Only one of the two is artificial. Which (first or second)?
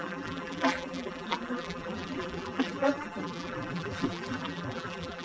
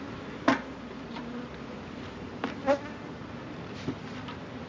first